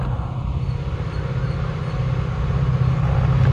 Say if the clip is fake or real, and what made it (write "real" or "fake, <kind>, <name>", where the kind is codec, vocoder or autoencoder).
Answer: real